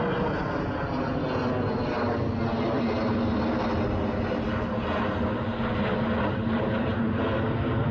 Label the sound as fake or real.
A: real